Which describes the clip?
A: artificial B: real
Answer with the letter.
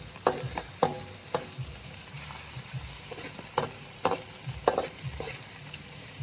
B